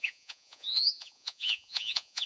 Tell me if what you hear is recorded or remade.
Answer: remade